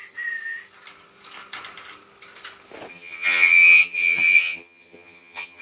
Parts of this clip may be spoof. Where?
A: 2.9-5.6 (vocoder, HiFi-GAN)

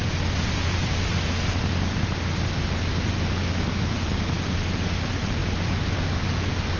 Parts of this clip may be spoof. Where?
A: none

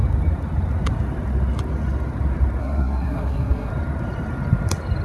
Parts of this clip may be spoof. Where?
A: 2.6-3.7 (codec, SNAC)

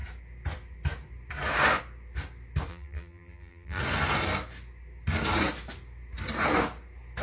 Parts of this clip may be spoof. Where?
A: 2.7-3.8 (vocoder, BigVGAN v2)